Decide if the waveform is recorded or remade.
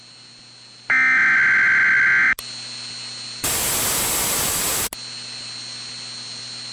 recorded